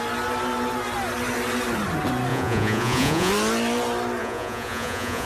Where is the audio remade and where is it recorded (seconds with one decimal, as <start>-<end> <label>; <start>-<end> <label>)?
0.0-2.3 recorded; 2.3-3.3 remade; 3.3-4.2 recorded; 4.2-5.3 remade